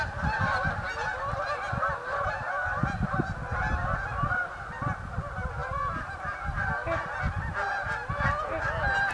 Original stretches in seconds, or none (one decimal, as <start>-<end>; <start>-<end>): 0.0-9.1

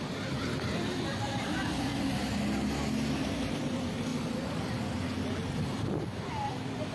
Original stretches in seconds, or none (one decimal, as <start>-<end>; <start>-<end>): 1.9-3.6; 4.1-5.5

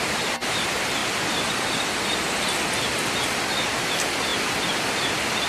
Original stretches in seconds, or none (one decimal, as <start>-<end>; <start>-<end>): 0.0-4.3; 4.9-5.5

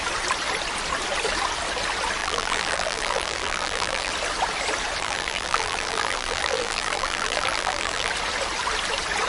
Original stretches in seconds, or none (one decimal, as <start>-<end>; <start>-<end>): 0.0-2.2; 4.1-5.0; 8.1-9.3

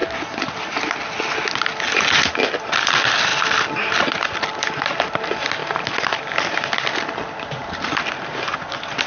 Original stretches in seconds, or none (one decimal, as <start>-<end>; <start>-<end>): 0.0-3.3; 4.2-7.6; 8.2-9.1